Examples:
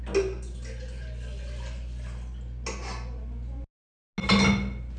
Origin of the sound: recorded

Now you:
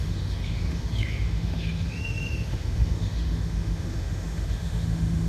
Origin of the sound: remade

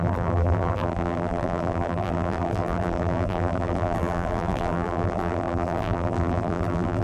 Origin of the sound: remade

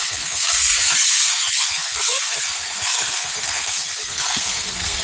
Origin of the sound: remade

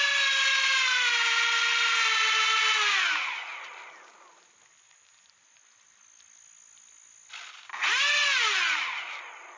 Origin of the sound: recorded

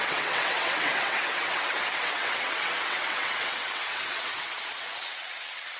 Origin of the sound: remade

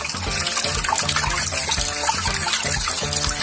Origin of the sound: recorded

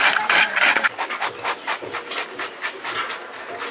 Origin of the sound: recorded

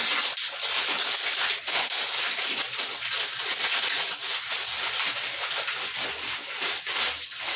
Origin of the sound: recorded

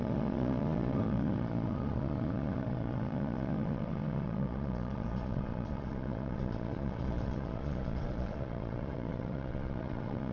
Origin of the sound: remade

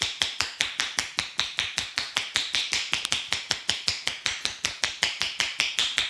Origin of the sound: recorded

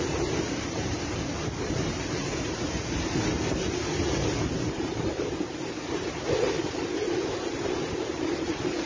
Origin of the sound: remade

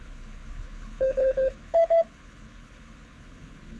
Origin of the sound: remade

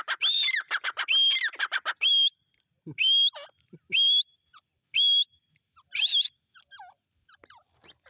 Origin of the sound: recorded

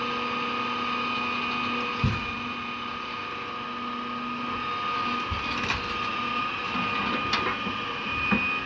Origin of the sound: recorded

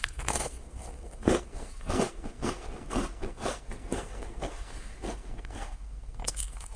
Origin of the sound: remade